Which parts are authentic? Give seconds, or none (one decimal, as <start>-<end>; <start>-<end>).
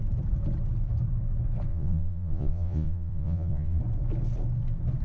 0.0-1.7; 3.8-5.0